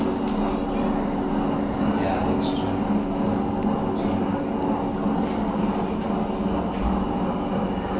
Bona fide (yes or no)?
yes